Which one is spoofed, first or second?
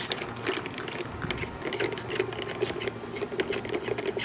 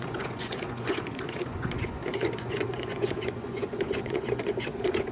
second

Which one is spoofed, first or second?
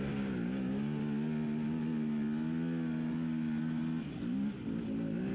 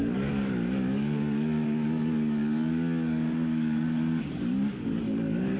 second